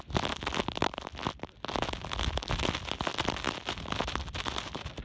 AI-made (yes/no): no